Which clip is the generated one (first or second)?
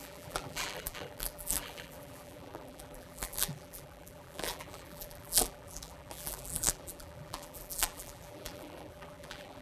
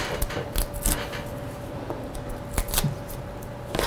first